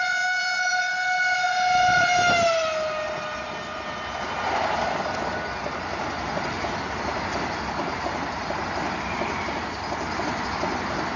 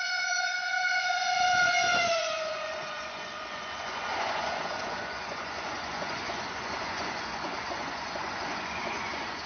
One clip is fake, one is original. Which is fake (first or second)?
second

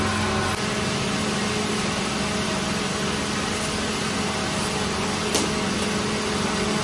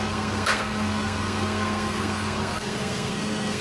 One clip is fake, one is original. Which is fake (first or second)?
second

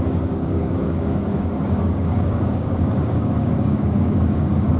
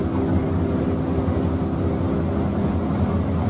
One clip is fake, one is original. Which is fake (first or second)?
first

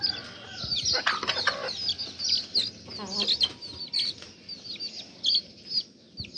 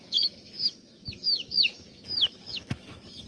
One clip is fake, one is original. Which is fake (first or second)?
second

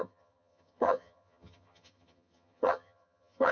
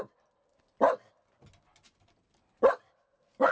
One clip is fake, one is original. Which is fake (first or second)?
first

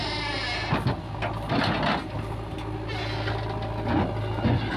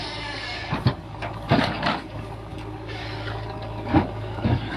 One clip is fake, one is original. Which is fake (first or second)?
second